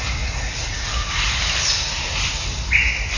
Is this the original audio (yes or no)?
yes